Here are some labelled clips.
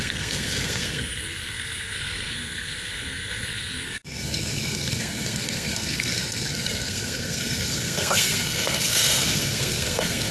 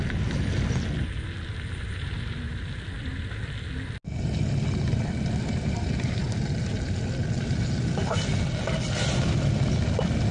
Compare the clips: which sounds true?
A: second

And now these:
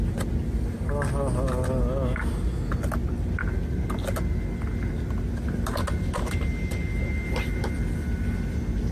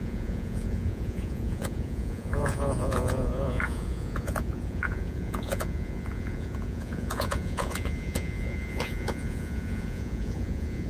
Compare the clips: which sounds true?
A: first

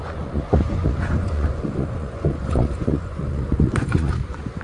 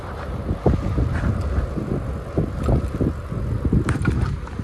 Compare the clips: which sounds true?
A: second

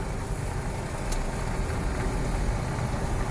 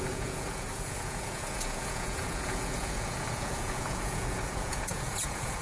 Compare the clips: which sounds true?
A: first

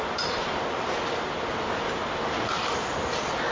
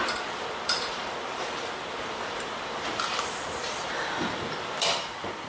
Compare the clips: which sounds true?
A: first